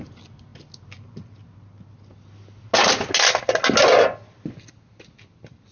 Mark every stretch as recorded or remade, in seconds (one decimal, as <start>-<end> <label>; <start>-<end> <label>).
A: 0.0-5.7 recorded